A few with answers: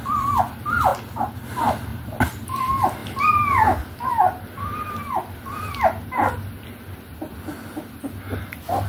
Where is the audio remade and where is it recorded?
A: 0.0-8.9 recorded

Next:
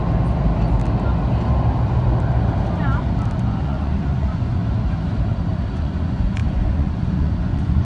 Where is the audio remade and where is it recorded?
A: 0.0-3.6 recorded; 3.6-4.6 remade; 4.6-5.7 recorded; 5.7-7.8 remade

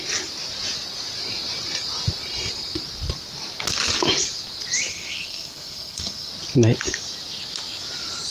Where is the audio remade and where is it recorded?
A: 0.0-4.9 recorded; 4.9-6.3 remade; 6.3-8.3 recorded

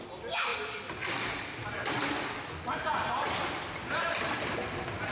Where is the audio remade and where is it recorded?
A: 0.0-5.1 recorded

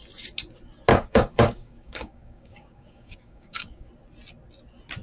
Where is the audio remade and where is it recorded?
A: 0.0-0.9 recorded; 0.9-3.9 remade; 3.9-5.0 recorded

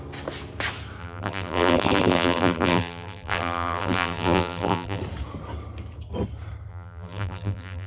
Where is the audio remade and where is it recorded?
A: 0.0-1.0 recorded; 1.0-5.0 remade; 5.0-6.7 recorded; 6.7-7.9 remade

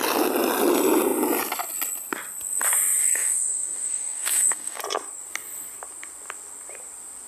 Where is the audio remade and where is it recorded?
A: 0.0-3.0 recorded; 3.0-4.8 remade; 4.8-7.3 recorded